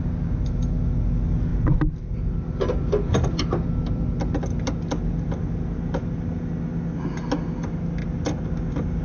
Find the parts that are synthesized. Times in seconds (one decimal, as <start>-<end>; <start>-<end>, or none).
none

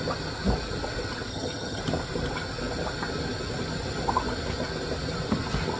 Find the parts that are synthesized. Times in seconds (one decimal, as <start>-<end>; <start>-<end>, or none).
1.3-1.8

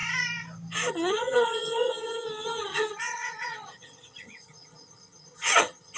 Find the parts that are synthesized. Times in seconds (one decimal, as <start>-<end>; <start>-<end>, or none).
0.9-6.0